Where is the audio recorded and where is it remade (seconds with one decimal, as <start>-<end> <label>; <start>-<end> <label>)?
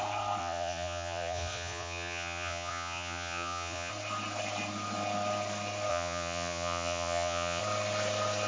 0.0-0.4 recorded; 0.4-3.9 remade; 3.9-5.9 recorded; 5.9-7.6 remade; 7.6-8.5 recorded